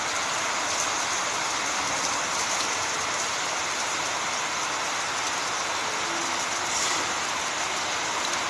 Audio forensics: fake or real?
real